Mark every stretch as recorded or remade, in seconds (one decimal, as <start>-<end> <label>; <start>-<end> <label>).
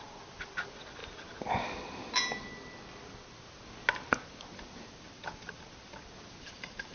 0.0-6.9 recorded